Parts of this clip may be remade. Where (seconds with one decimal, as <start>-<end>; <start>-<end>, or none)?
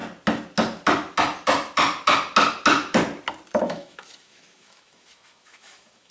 3.7-6.1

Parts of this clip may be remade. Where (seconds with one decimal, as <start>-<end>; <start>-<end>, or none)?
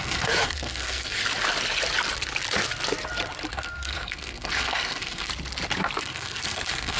0.0-1.2; 3.5-5.3; 6.0-7.0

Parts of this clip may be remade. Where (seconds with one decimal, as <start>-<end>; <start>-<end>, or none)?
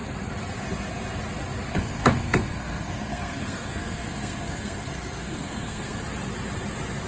1.7-6.0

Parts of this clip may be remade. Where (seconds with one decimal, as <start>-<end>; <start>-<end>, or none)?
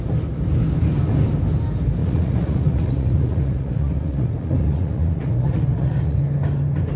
2.0-6.2